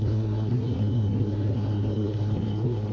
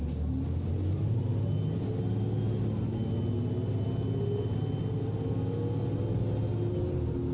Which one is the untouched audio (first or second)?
second